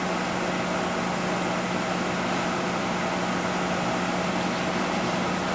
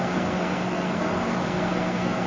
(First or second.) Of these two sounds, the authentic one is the first